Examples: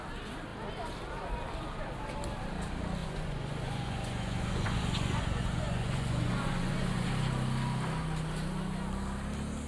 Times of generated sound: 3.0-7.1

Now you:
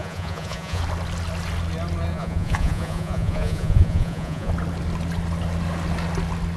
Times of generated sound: 0.0-0.8; 2.1-4.5

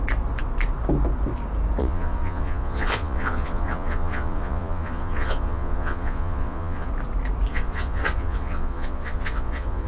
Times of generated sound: 1.8-6.9; 7.5-9.9

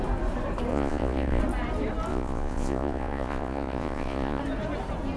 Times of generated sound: 0.7-1.4; 2.1-4.4

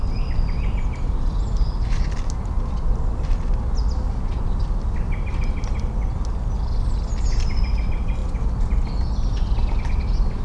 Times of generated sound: none